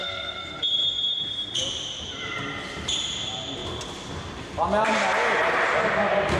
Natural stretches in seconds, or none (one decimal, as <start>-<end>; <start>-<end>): 0.6-6.4